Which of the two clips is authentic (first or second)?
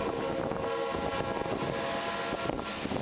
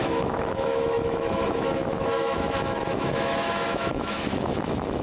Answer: first